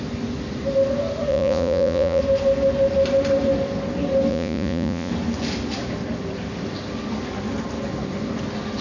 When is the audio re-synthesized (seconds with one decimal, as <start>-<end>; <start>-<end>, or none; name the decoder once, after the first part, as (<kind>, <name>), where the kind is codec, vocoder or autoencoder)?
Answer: 1.3-2.2 (vocoder, Vocos); 4.3-5.1